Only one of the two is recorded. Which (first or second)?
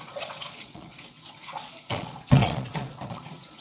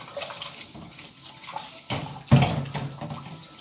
second